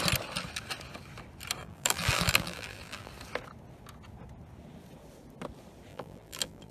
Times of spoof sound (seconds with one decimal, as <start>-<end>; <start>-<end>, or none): 1.6-3.1; 5.9-6.7